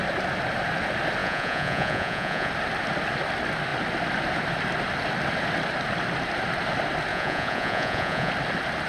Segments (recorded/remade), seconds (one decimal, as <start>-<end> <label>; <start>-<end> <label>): 0.0-1.2 recorded; 1.2-2.5 remade; 2.5-7.1 recorded; 7.1-8.3 remade; 8.3-8.9 recorded